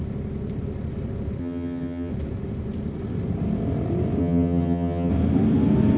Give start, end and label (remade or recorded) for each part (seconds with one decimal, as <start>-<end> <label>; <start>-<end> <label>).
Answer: 0.0-1.4 recorded; 1.4-2.1 remade; 2.1-4.2 recorded; 4.2-5.1 remade; 5.1-6.0 recorded